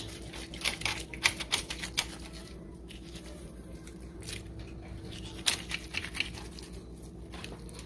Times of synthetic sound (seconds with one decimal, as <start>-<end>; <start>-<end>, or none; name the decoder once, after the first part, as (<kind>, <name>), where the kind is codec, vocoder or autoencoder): 2.4-4.2 (vocoder, BigVGAN v2)